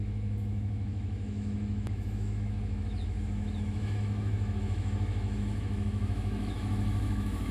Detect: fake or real fake